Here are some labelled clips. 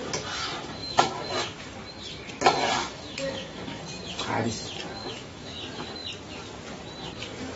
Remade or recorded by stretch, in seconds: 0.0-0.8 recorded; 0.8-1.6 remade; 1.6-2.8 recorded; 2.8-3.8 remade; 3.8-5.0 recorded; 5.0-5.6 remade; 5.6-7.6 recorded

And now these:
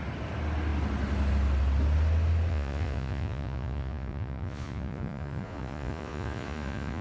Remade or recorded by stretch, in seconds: 0.0-2.5 recorded; 2.5-7.0 remade

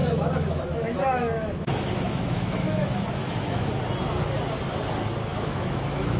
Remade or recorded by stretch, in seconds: 0.0-3.7 remade; 3.7-5.3 recorded; 5.3-6.2 remade

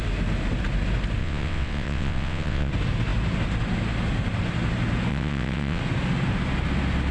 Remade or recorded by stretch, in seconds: 0.0-1.2 recorded; 1.2-2.7 remade; 2.7-5.1 recorded; 5.1-5.8 remade; 5.8-7.1 recorded